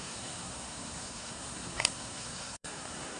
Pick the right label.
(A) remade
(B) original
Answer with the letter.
A